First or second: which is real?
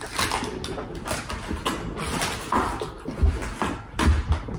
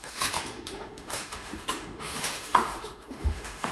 first